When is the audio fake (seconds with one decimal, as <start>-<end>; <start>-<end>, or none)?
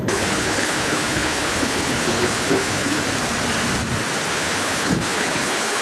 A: 0.0-3.0; 4.3-5.8